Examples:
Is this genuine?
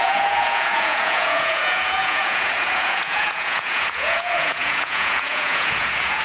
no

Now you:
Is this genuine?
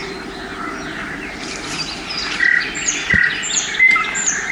yes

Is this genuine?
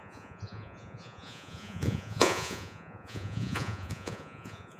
no